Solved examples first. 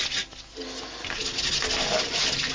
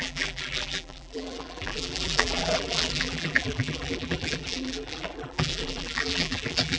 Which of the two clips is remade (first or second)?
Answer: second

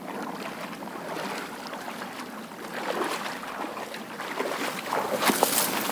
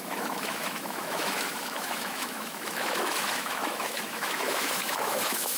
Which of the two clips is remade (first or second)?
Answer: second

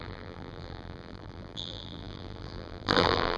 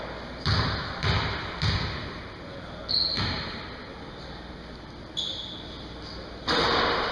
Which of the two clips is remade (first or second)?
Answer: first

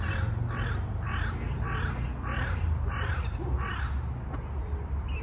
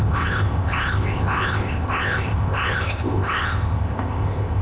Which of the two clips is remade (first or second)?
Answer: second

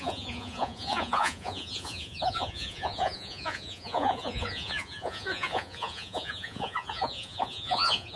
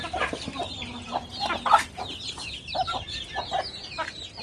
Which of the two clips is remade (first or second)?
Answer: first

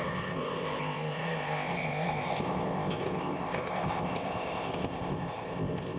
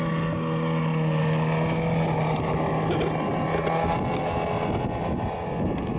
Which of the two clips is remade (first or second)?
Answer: first